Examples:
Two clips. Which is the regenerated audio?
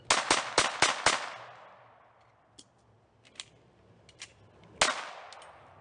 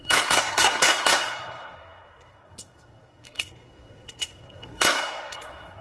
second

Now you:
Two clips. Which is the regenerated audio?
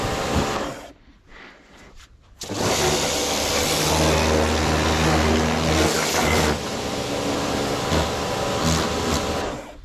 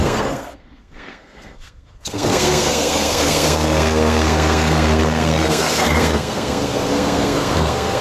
second